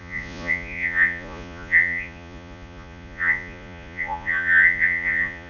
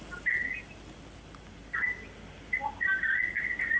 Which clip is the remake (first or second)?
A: first